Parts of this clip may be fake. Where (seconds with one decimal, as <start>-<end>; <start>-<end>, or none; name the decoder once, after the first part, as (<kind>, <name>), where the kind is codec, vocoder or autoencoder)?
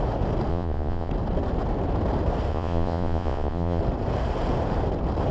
0.5-1.1 (vocoder, Vocos); 2.5-3.8